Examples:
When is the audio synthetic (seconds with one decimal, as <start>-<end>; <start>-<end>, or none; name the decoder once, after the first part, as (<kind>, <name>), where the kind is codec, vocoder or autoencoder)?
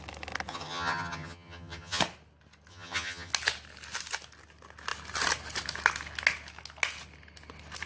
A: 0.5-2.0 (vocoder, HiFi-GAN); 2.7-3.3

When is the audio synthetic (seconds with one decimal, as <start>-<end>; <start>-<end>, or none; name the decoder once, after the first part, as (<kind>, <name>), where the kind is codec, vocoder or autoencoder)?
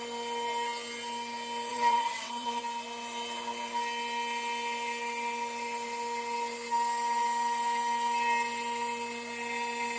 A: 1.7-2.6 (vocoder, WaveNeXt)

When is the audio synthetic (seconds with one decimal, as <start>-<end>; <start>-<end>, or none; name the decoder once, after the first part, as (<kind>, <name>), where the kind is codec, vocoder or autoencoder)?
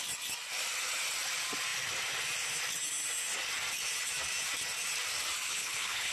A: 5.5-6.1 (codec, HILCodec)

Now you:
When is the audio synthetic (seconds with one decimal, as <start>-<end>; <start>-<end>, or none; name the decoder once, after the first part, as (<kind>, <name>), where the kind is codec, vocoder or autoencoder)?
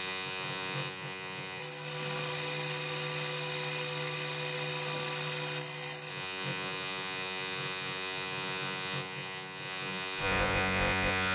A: 0.0-1.6 (vocoder, Vocos); 6.1-11.3